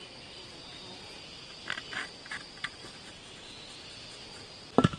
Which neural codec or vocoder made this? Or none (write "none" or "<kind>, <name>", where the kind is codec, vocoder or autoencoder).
none